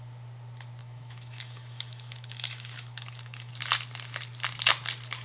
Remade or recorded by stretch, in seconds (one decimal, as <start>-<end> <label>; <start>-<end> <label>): 0.0-0.8 recorded; 0.8-3.5 remade; 3.5-5.2 recorded